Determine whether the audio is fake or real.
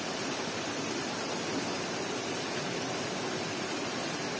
real